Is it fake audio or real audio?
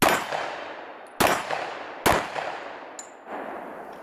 real